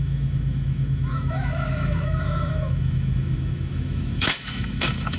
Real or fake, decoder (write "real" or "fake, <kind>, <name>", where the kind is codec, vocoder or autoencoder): fake, autoencoder, DAC-VAE